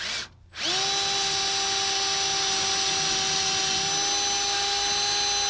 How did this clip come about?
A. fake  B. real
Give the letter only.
B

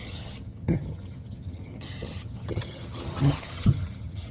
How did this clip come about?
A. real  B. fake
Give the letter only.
B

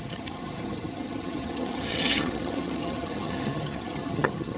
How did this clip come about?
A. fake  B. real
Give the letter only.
A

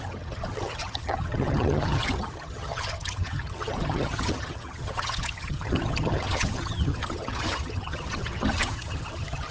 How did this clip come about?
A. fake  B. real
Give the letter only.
A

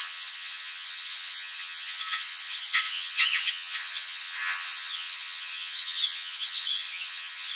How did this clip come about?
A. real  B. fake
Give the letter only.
B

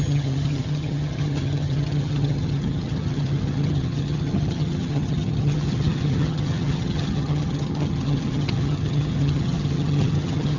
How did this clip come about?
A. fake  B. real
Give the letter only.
A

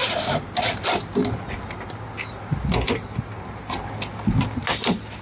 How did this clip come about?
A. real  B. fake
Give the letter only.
A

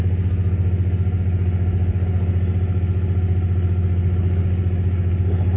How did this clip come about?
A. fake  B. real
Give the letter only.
B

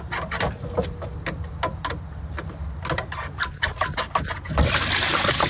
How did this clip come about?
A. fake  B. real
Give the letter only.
B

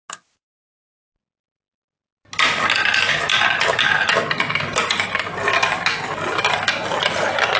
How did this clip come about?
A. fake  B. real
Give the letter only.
B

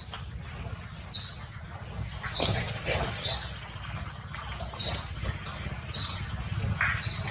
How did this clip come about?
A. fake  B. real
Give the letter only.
B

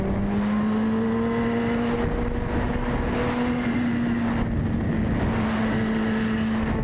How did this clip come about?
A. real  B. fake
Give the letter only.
A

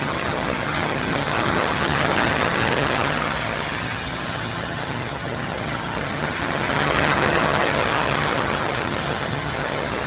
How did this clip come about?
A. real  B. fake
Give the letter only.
B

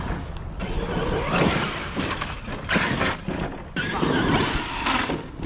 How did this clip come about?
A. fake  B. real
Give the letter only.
B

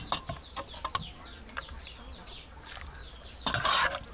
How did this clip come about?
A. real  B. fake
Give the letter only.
A